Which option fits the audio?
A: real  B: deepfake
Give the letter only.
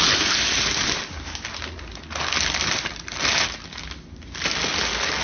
A